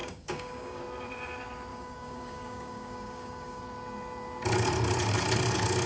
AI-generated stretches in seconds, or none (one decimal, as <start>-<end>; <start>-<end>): 0.0-0.8; 1.7-3.6